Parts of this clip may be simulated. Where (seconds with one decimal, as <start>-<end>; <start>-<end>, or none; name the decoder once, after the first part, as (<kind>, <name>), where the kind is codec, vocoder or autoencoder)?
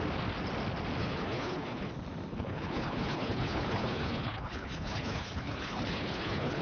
1.0-1.9 (codec, HILCodec); 2.3-6.6